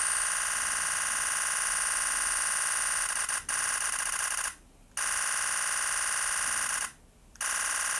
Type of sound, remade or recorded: recorded